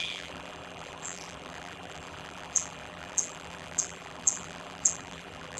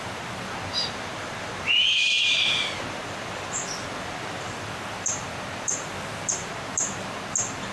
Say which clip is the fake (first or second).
first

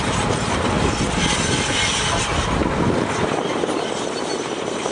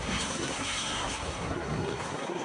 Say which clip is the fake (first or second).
second